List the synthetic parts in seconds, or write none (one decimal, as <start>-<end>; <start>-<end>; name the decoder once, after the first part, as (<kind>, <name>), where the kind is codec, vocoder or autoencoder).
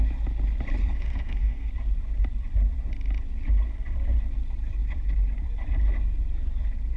0.8-1.7 (codec, SNAC)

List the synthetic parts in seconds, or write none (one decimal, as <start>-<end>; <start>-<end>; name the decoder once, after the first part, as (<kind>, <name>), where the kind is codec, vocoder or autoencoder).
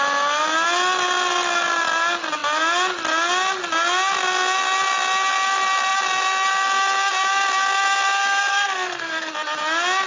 8.5-9.3 (codec, SNAC)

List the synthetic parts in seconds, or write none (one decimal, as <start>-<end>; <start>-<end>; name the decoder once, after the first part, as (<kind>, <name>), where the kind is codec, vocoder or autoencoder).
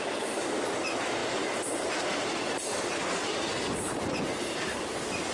none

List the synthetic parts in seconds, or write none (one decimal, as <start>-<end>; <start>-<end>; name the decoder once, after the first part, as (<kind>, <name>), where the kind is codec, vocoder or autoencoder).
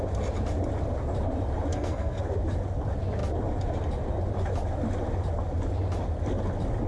1.7-2.2 (codec, SNAC)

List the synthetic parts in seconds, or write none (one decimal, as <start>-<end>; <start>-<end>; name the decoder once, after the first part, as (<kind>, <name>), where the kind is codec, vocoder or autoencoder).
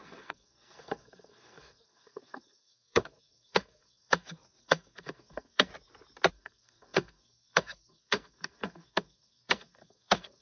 0.0-5.7 (codec, SNAC); 6.3-10.4